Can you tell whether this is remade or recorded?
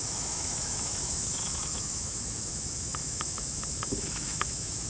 remade